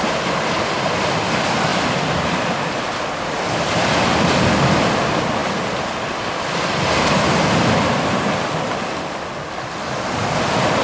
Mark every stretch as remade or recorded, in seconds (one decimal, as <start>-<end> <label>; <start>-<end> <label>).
0.0-10.8 recorded